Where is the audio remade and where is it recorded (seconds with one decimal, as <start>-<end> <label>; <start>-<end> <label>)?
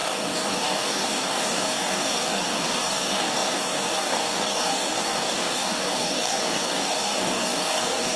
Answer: 0.0-8.2 remade